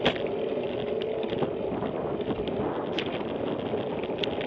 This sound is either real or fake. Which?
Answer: real